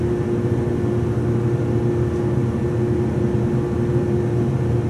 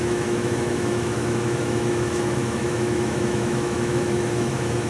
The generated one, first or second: second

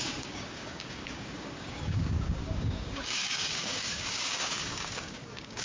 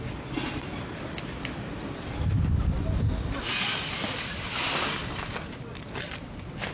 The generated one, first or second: first